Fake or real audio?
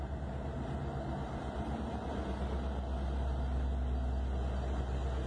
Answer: real